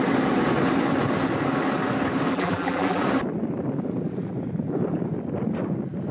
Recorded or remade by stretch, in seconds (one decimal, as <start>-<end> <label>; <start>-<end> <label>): 0.0-2.3 recorded; 2.3-3.0 remade; 3.0-6.1 recorded